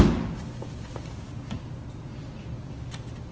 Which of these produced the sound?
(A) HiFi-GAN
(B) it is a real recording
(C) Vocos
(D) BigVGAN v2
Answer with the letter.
B